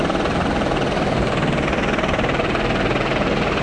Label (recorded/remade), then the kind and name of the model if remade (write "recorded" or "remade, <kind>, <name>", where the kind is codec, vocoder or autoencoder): recorded